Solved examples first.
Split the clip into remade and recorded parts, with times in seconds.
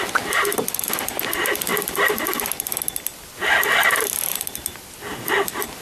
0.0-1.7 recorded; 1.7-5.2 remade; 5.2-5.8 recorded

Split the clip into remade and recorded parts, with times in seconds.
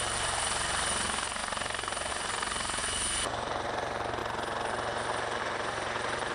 0.0-2.8 remade; 2.8-3.3 recorded; 3.3-4.2 remade; 4.2-5.4 recorded; 5.4-6.3 remade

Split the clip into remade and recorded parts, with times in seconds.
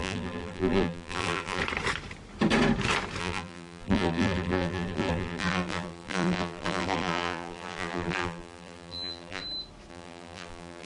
0.0-1.6 remade; 1.6-3.2 recorded; 3.2-9.4 remade; 9.4-9.9 recorded; 9.9-10.9 remade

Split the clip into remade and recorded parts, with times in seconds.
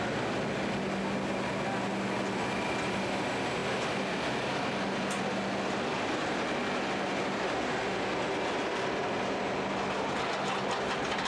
0.0-11.3 recorded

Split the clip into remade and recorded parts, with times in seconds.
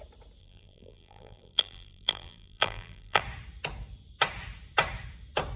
0.0-0.4 recorded; 0.4-3.2 remade; 3.2-5.6 recorded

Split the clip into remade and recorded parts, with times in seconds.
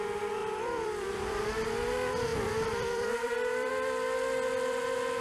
0.0-0.4 recorded; 0.4-1.4 remade; 1.4-2.3 recorded; 2.3-3.7 remade; 3.7-5.2 recorded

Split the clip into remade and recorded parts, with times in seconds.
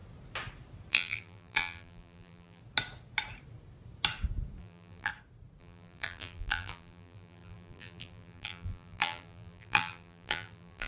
0.0-0.9 recorded; 0.9-2.6 remade; 2.6-4.6 recorded; 4.6-5.1 remade; 5.1-5.6 recorded; 5.6-10.9 remade